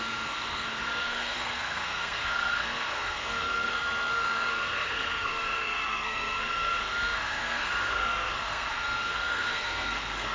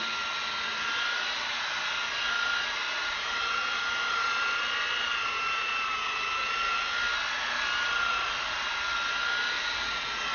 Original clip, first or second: second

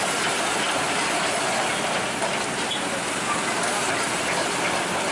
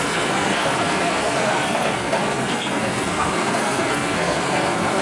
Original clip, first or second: first